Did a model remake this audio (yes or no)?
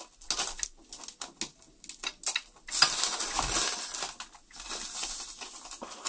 no